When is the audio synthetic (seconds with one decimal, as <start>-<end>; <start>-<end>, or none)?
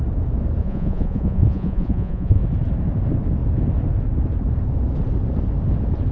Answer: 0.6-2.4